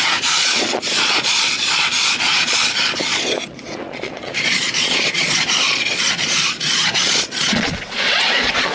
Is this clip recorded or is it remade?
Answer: remade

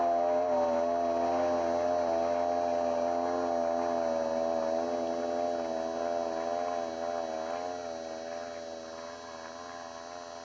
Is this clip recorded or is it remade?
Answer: recorded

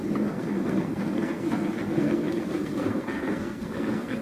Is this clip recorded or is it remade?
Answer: remade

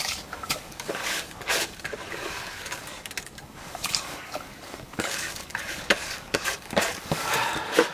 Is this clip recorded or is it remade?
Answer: remade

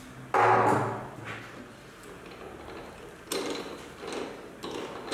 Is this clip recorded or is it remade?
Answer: recorded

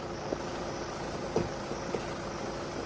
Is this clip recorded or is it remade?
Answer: recorded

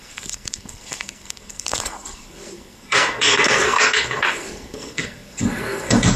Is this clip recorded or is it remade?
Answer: remade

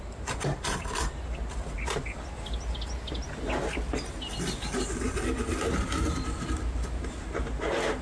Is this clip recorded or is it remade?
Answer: recorded